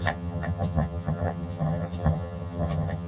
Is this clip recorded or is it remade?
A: remade